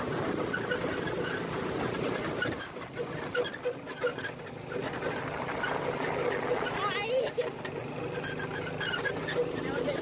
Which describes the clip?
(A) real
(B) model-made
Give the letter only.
A